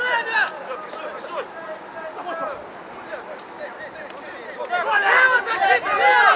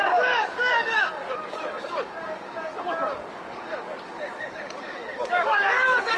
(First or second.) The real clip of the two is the first